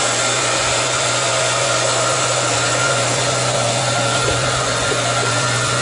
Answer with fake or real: fake